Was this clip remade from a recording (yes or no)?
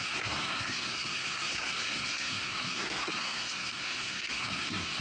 yes